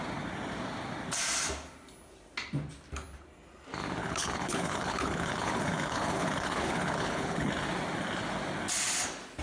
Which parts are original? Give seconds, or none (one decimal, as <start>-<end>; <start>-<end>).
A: 0.0-4.0; 7.5-9.4